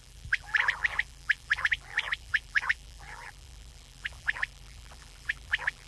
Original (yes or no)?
no